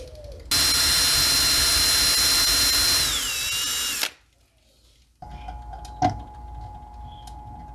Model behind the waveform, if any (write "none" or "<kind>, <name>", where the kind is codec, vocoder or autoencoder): none